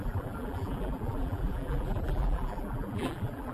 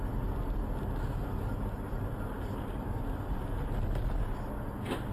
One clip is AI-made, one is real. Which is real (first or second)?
second